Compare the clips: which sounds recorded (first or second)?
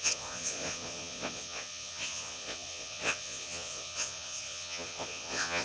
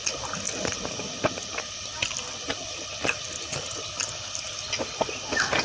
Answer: second